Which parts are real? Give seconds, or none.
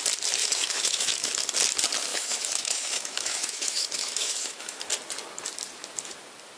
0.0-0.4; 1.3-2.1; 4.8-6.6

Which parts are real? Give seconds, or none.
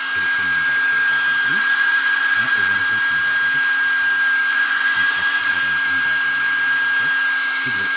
0.0-1.5; 2.8-4.5; 5.6-8.0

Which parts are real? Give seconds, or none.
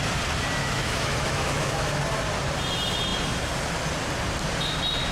0.0-0.6; 2.0-5.1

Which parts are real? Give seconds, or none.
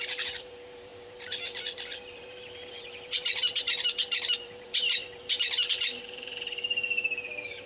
none